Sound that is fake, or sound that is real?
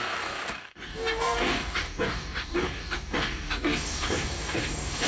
fake